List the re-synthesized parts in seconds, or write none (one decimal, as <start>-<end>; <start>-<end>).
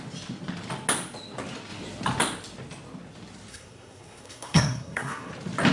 3.5-5.3